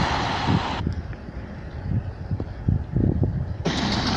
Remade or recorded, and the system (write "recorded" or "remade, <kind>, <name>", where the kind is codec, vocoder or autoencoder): recorded